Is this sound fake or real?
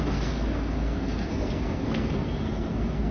fake